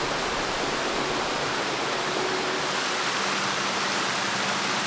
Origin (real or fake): real